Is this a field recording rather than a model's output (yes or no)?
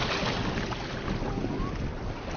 yes